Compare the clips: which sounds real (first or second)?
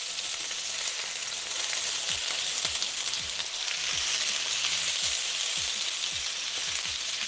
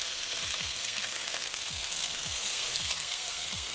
first